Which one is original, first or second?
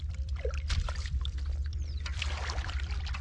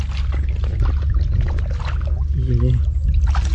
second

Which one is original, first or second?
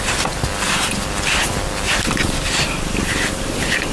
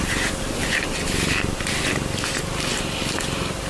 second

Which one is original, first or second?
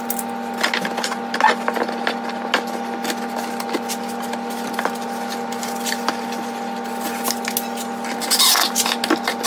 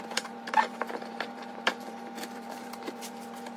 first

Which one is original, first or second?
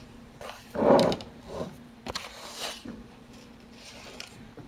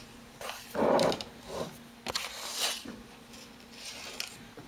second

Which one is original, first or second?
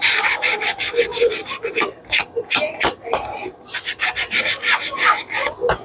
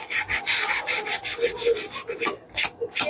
second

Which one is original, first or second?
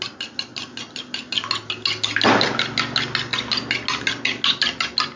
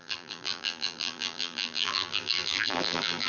first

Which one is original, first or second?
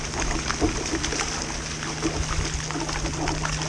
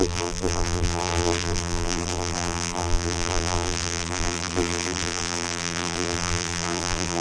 first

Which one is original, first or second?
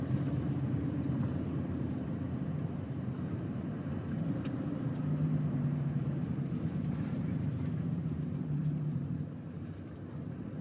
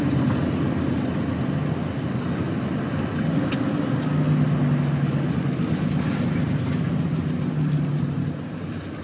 second